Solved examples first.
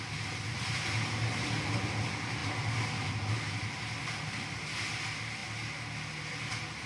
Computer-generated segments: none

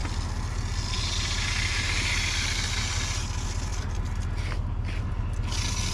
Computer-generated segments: none

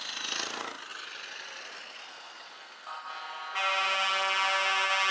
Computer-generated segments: 2.1-3.1 (codec, SNAC)

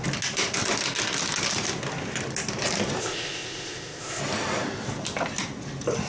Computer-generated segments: 3.0-4.2 (codec, ZipCodec)